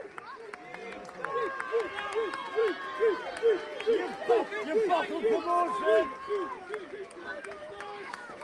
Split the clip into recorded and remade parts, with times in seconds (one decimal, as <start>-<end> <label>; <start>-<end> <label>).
0.0-7.6 recorded; 7.6-8.4 remade